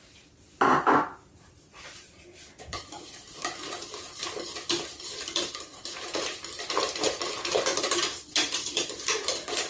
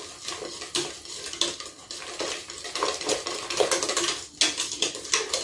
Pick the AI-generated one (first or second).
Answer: first